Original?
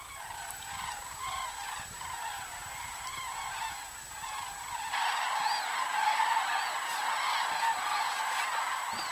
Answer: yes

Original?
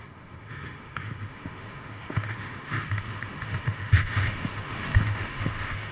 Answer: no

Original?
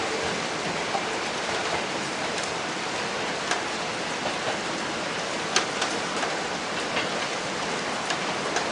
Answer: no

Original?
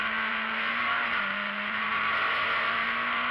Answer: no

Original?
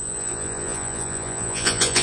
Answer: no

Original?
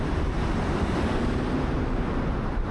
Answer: yes